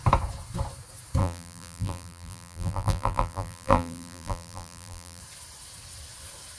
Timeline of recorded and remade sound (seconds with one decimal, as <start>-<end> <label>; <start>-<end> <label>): 0.0-1.2 recorded; 1.2-5.2 remade; 5.2-6.6 recorded

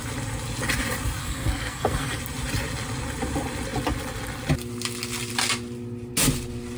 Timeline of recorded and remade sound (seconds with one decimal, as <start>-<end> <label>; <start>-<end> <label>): 0.0-1.2 recorded; 1.2-2.2 remade; 2.2-6.8 recorded

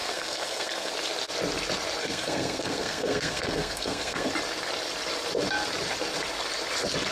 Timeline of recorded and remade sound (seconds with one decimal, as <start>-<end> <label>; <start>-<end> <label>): 0.0-0.9 remade; 0.9-2.0 recorded; 2.0-4.3 remade; 4.3-7.1 recorded

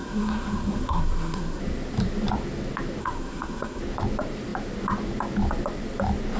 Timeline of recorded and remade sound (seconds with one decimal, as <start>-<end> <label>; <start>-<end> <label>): 0.0-1.6 remade; 1.6-3.0 recorded; 3.0-3.8 remade; 3.8-6.4 recorded

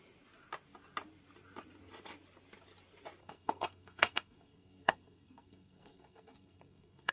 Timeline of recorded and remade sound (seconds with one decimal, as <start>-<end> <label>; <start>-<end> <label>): 0.0-3.2 recorded; 3.2-7.1 remade

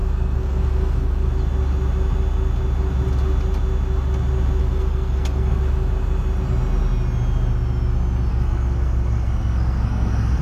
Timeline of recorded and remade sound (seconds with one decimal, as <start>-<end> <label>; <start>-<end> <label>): 0.0-1.3 remade; 1.3-4.6 recorded; 4.6-5.6 remade; 5.6-8.3 recorded; 8.3-10.4 remade

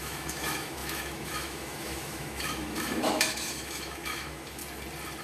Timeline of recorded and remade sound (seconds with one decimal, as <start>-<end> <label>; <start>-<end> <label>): 0.0-4.6 remade; 4.6-5.2 recorded

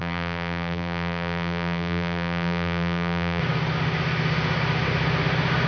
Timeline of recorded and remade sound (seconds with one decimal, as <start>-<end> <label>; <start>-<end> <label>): 0.0-3.4 remade; 3.4-5.7 recorded